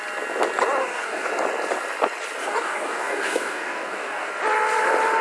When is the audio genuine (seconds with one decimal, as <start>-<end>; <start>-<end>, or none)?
0.0-0.8; 1.3-2.4; 4.3-5.2